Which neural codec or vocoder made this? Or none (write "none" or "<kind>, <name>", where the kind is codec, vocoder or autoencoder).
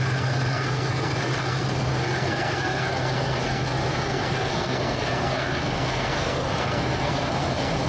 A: codec, SNAC